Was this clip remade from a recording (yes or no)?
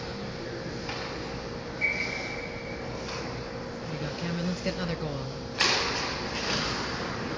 no